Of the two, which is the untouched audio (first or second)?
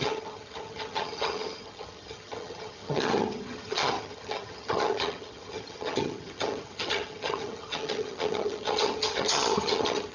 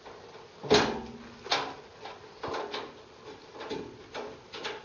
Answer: second